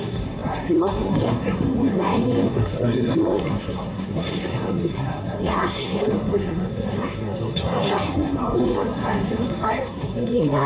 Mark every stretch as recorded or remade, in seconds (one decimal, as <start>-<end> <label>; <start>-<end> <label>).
0.0-10.7 remade